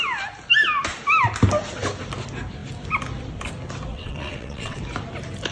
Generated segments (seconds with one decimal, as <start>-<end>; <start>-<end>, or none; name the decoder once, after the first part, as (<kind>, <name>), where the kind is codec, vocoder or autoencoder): 3.9-4.8 (vocoder, WaveNeXt)